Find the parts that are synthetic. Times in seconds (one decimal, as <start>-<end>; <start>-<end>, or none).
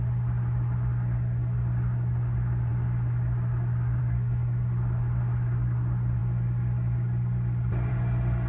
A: none